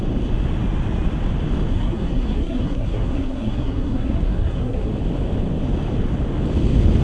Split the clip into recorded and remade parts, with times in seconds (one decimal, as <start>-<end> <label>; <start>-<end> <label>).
0.0-1.7 recorded; 1.7-4.9 remade; 4.9-7.0 recorded